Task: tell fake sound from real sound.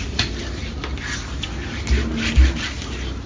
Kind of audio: real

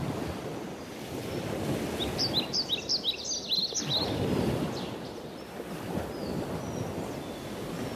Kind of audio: real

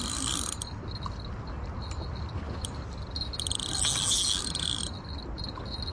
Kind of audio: real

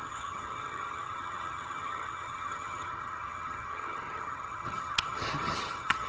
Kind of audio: fake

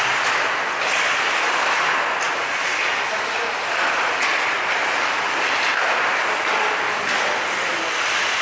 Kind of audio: real